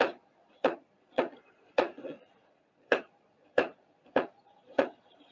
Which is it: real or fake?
fake